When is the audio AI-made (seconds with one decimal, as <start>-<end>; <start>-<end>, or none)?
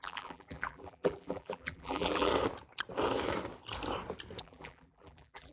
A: 0.0-2.3; 4.4-5.5